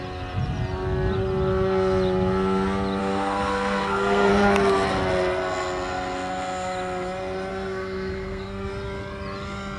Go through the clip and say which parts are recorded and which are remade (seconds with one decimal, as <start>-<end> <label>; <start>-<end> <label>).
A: 0.0-3.0 recorded; 3.0-4.3 remade; 4.3-7.5 recorded; 7.5-8.7 remade; 8.7-9.8 recorded